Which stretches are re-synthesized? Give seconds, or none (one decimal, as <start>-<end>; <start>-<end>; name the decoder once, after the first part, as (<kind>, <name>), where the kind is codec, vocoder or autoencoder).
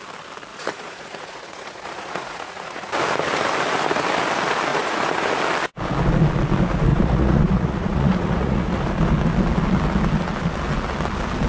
0.5-2.9 (vocoder, Vocos); 4.7-5.4; 6.9-8.8